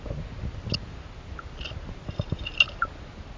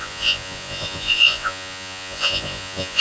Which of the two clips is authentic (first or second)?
first